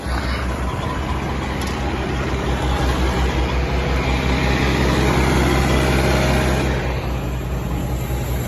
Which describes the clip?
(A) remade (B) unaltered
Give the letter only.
B